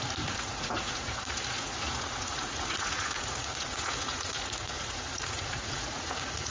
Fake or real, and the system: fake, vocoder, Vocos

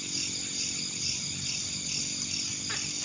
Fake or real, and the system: real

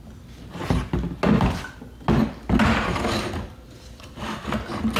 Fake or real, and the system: real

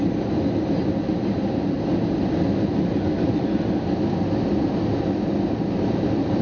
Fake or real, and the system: real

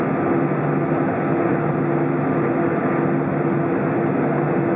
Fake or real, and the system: real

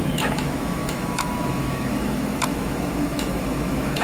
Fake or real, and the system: fake, autoencoder, DAC-VAE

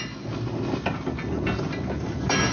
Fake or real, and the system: real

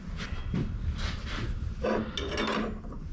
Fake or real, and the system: real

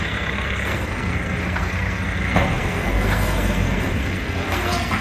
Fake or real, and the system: fake, codec, SNAC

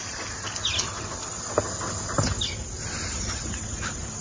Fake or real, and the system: real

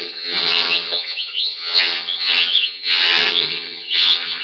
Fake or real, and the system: fake, vocoder, HiFi-GAN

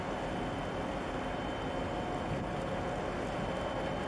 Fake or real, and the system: real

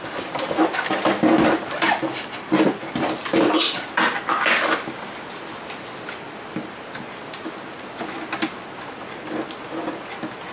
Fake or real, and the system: real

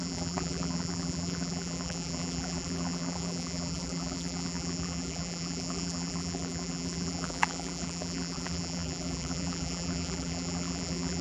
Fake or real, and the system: fake, vocoder, BigVGAN v2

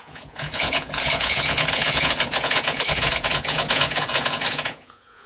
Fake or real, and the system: fake, vocoder, Vocos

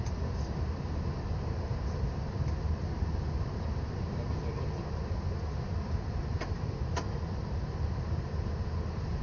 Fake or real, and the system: real